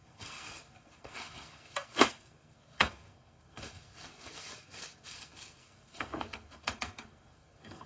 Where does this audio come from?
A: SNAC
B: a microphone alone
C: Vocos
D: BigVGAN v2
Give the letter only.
A